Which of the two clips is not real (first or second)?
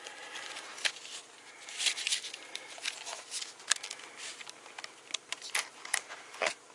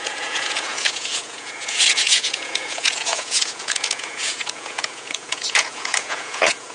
second